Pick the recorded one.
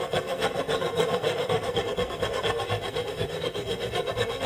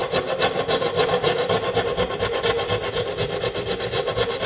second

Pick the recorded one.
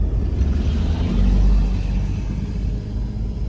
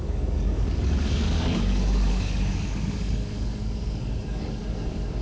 first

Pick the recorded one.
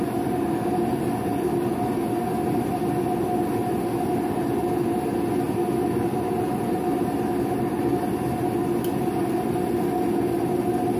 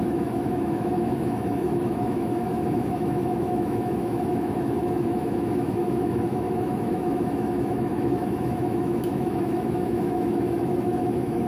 first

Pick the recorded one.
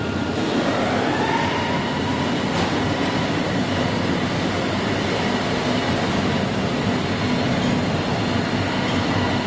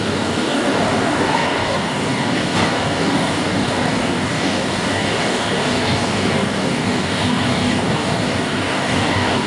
first